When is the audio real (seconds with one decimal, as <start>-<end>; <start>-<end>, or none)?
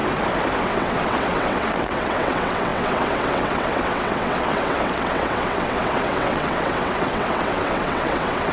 0.0-0.6